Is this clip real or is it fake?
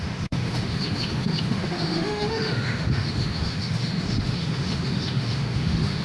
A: fake